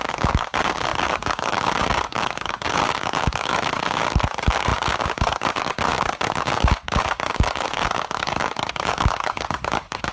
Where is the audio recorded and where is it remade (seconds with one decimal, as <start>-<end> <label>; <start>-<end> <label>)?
0.0-10.1 remade